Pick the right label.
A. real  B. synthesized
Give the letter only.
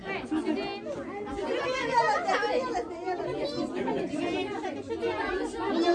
A